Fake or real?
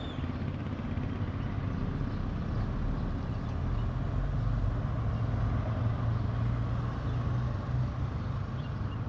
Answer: real